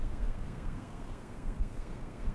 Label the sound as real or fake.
fake